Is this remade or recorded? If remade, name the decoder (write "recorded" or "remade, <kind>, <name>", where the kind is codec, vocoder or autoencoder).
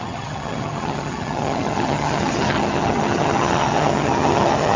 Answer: remade, vocoder, HiFi-GAN